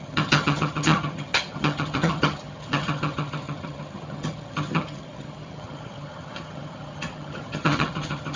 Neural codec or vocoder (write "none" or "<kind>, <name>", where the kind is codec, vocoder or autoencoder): vocoder, HiFi-GAN